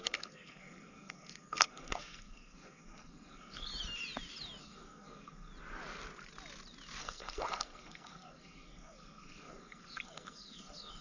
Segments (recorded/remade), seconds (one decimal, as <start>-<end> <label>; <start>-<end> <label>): 0.0-3.7 remade; 3.7-4.6 recorded; 4.6-5.5 remade; 5.5-7.0 recorded; 7.0-11.0 remade